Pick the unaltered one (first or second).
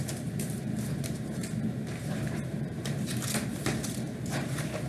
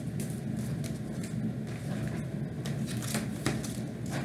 second